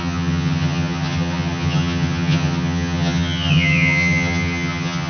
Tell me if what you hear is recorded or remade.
remade